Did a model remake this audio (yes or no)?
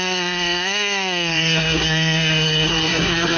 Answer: yes